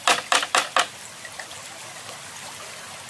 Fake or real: real